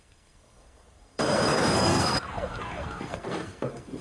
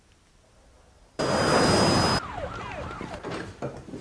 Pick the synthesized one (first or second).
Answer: first